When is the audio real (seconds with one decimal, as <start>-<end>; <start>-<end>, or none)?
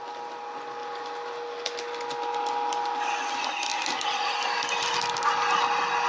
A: 0.0-6.1